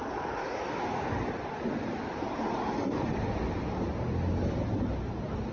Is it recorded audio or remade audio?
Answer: recorded